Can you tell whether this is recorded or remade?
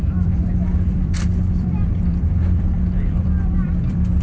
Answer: remade